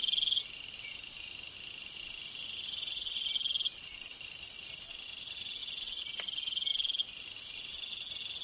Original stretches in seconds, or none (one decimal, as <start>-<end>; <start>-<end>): 0.0-8.4